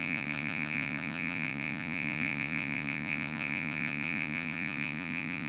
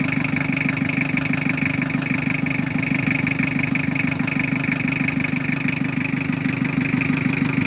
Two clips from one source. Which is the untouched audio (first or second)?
second